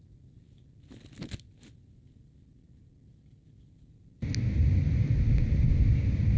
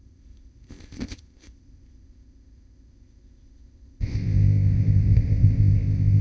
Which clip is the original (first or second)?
first